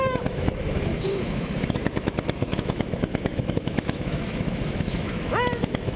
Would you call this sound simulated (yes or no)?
yes